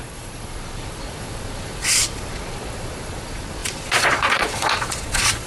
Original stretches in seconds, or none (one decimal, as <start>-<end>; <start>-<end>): none